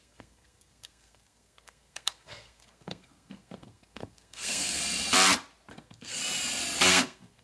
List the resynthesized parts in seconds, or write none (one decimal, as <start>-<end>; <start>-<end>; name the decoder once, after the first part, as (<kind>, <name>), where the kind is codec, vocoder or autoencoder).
0.0-4.8 (codec, SNAC); 5.7-6.2; 6.9-7.4